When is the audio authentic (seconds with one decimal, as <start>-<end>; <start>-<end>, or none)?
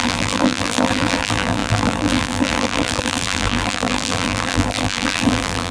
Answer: none